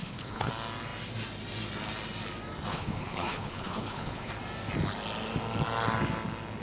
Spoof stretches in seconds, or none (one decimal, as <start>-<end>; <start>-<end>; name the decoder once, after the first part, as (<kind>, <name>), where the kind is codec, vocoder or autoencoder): 0.0-0.5 (codec, HILCodec); 2.7-4.3